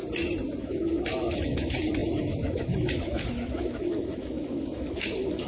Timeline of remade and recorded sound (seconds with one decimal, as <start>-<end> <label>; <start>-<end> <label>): 0.0-0.6 recorded; 0.6-5.5 remade